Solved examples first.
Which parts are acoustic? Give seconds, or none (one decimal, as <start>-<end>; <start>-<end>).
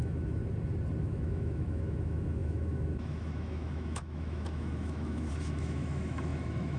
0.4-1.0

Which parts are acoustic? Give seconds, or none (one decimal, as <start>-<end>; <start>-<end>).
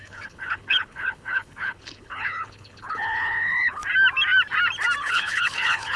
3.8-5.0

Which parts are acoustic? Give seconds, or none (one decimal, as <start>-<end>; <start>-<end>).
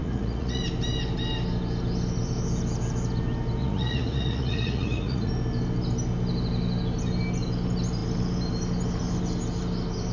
0.6-3.6; 5.3-10.1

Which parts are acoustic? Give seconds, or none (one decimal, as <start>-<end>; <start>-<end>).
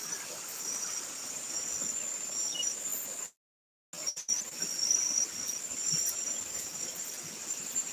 0.0-7.9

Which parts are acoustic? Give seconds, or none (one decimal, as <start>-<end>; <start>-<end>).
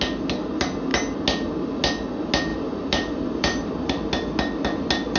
0.0-2.5; 4.1-5.2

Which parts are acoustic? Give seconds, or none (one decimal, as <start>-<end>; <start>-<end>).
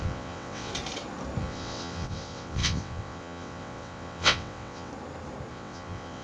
0.7-1.4; 4.9-5.5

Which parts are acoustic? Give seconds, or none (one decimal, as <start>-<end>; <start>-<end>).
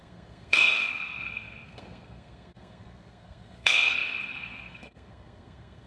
none